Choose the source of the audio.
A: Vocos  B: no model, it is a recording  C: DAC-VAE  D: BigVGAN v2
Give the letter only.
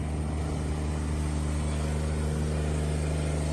B